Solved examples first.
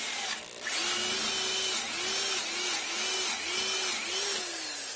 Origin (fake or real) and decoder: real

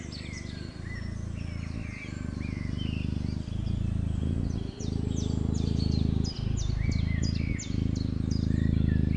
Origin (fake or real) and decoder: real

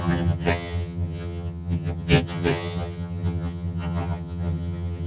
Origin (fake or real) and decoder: fake, vocoder, HiFi-GAN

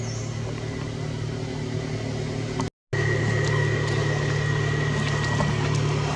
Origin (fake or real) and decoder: real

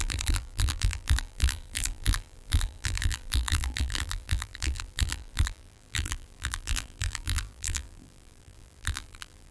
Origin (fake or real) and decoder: fake, vocoder, BigVGAN v2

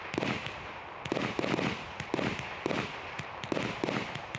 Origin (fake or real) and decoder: real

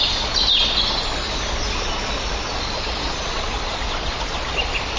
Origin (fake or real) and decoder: real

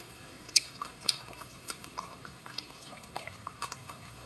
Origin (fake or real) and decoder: fake, codec, SNAC